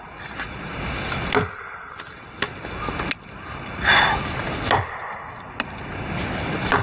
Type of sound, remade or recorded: recorded